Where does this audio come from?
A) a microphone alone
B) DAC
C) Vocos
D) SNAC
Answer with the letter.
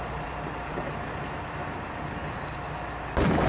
A